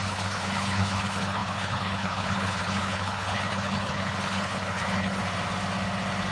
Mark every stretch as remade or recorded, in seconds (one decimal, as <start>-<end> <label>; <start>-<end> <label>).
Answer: 0.0-5.2 remade; 5.2-6.3 recorded